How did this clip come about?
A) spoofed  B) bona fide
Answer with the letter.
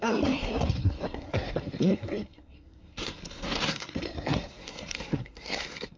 A